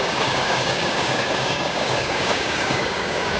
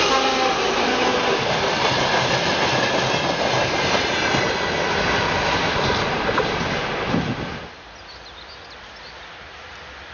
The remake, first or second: first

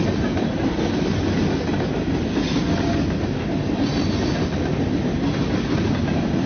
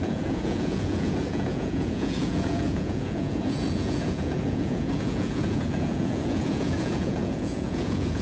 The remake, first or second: second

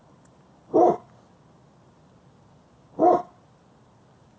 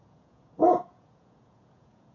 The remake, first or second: second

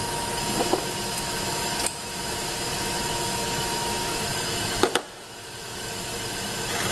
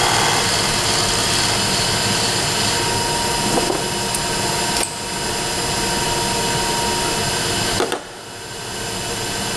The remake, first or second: first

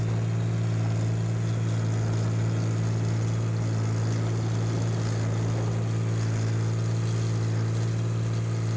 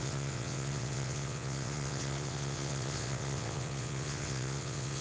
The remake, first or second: second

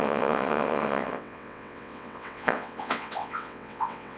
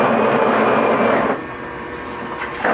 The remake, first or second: first